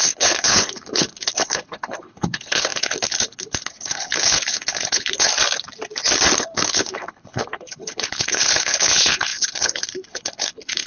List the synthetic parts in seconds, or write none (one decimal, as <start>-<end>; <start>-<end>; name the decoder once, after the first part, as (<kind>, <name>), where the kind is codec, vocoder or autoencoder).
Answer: 0.0-5.3 (codec, HILCodec); 6.4-10.9